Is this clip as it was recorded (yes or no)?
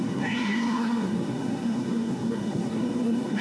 no